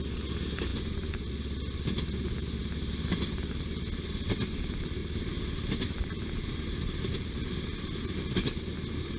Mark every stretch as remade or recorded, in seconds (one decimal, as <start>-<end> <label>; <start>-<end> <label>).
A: 0.0-0.7 recorded; 0.7-1.3 remade; 1.3-9.2 recorded